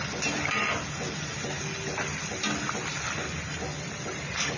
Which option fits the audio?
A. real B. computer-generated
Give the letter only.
A